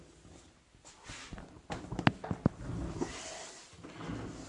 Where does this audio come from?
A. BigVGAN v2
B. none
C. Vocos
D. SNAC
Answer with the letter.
B